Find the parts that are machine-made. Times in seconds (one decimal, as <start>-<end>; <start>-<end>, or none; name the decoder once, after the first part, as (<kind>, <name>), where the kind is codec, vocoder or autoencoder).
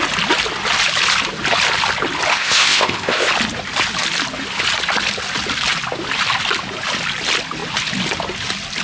2.3-3.3 (codec, ZipCodec)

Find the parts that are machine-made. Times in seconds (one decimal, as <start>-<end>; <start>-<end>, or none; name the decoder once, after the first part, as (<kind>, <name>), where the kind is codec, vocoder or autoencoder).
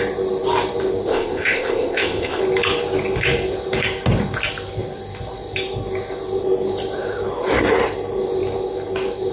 1.1-2.4 (codec, ZipCodec)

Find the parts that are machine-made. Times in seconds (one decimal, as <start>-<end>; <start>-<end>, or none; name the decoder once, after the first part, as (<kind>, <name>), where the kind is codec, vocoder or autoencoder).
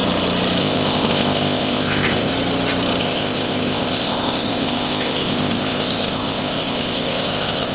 0.6-2.3 (codec, ZipCodec); 3.0-7.7